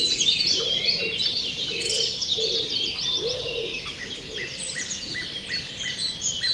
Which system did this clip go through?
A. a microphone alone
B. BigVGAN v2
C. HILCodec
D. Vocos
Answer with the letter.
B